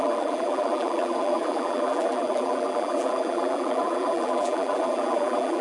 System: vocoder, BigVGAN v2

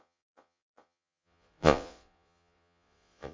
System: vocoder, Vocos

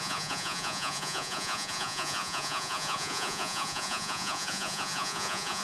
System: vocoder, Vocos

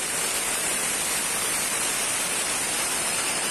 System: vocoder, BigVGAN v2